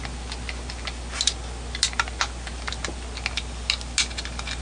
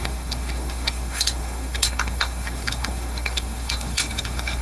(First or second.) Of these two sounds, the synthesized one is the second